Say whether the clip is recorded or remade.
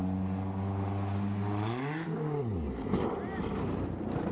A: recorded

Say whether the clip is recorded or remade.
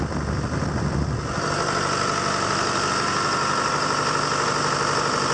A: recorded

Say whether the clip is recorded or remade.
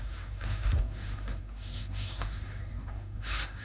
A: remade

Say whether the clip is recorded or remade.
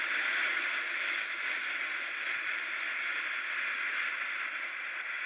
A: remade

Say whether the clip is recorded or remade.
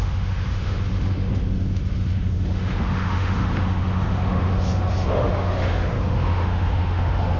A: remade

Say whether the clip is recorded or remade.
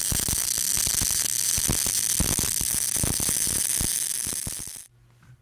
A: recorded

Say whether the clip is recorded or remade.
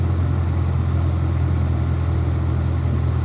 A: recorded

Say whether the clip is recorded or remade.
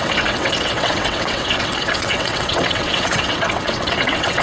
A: remade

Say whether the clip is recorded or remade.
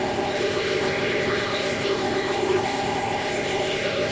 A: remade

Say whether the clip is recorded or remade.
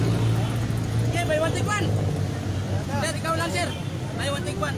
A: recorded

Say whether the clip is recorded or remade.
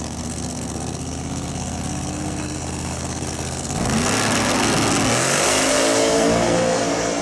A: remade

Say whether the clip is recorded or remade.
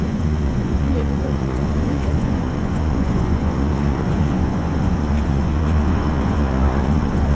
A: remade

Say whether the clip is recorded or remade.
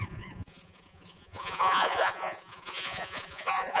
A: remade